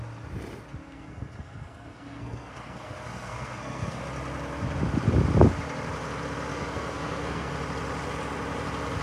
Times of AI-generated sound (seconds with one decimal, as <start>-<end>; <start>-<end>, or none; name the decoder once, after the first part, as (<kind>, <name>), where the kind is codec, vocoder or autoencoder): 0.8-4.0 (codec, SNAC); 6.5-7.5